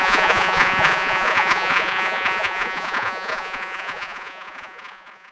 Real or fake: fake